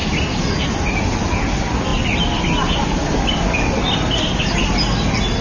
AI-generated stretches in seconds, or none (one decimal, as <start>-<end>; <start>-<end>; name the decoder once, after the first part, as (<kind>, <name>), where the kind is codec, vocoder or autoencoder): none